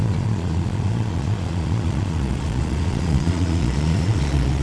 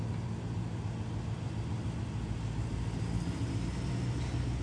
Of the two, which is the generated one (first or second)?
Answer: first